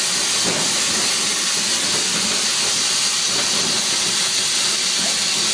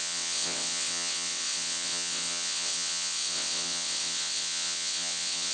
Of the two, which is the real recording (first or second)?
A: first